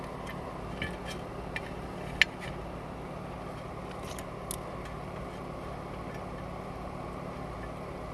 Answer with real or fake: real